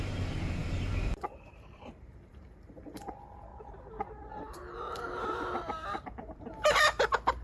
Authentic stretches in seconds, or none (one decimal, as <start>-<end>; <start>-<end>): 3.5-4.3

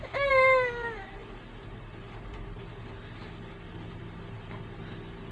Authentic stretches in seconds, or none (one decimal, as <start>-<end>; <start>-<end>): 0.0-5.3